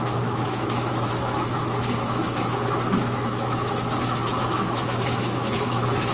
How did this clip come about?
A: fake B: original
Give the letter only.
A